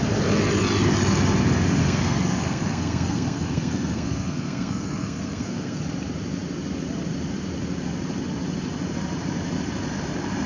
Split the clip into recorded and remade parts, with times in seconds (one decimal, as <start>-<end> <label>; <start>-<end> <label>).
0.0-1.8 recorded; 1.8-5.8 remade; 5.8-10.5 recorded